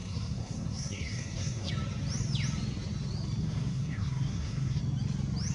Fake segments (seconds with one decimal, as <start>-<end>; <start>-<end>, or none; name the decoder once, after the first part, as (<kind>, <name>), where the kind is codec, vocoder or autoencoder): 0.0-1.7 (codec, SNAC); 3.4-4.8